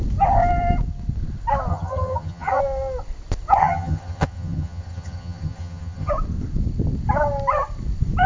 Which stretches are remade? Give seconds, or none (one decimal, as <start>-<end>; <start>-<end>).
1.7-2.6; 3.6-6.1